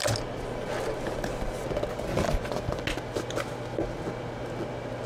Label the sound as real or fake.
real